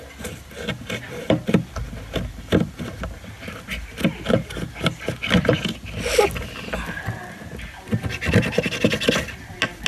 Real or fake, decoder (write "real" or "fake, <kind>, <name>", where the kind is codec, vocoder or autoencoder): real